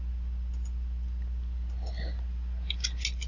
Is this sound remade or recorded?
recorded